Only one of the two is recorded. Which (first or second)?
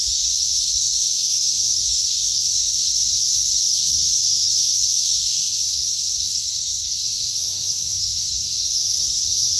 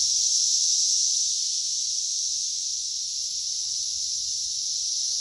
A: second